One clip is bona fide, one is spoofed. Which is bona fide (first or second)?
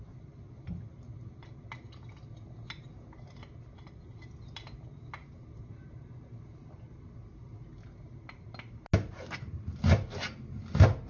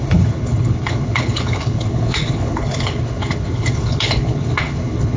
first